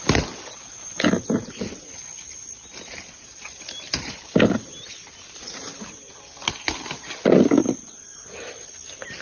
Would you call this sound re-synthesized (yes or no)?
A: no